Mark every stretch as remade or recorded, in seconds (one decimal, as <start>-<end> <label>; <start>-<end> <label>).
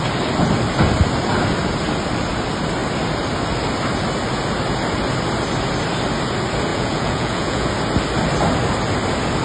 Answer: 0.0-6.7 recorded; 6.7-7.7 remade; 7.7-9.4 recorded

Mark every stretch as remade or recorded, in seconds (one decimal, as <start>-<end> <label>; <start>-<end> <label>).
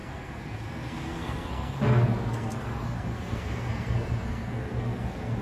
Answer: 0.0-5.4 remade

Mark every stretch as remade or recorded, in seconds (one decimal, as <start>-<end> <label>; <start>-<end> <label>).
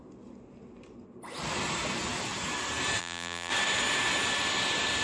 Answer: 0.0-3.0 recorded; 3.0-3.5 remade; 3.5-5.0 recorded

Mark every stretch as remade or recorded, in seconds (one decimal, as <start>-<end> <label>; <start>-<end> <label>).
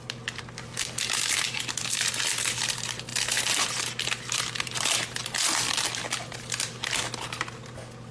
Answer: 0.0-8.1 recorded